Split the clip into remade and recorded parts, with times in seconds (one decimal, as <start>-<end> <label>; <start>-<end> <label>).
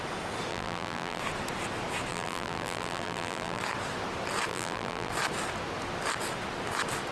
0.0-0.5 recorded; 0.5-1.2 remade; 1.2-2.1 recorded; 2.1-3.6 remade; 3.6-4.5 recorded; 4.5-5.1 remade; 5.1-7.1 recorded